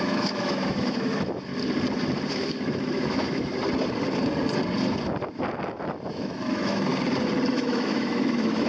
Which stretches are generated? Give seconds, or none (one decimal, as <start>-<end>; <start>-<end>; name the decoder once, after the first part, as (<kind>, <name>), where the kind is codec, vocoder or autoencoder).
0.0-1.5 (autoencoder, DAC-VAE); 2.3-3.5; 6.1-6.9; 7.5-8.7